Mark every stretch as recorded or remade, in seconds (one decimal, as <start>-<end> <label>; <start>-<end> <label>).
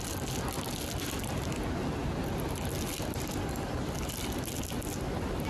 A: 0.0-5.5 recorded